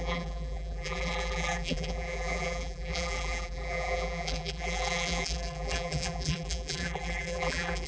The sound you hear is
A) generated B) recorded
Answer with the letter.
A